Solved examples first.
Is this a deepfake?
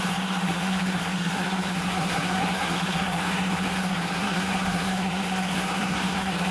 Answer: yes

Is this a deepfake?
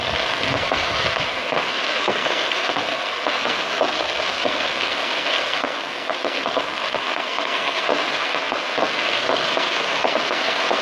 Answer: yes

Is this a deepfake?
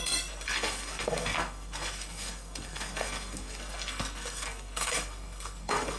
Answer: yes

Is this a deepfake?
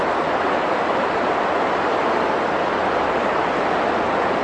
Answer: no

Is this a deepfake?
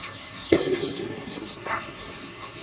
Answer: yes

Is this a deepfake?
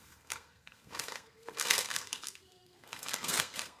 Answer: yes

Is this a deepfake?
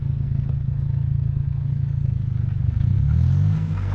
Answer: yes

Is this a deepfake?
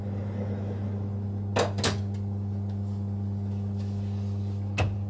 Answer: no